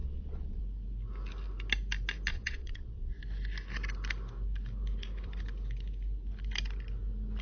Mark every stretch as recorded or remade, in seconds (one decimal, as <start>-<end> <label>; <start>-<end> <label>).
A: 0.0-0.6 remade; 0.6-2.3 recorded; 2.3-3.2 remade; 3.2-7.4 recorded